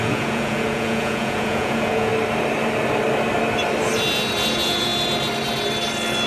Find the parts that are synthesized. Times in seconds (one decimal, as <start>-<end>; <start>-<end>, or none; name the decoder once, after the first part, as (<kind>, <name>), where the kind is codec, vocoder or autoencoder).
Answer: 0.0-2.1 (vocoder, Vocos); 4.5-4.9